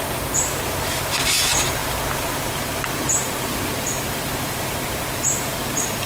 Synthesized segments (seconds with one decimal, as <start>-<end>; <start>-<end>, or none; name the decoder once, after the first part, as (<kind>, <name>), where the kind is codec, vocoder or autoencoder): 0.0-6.1 (vocoder, BigVGAN v2)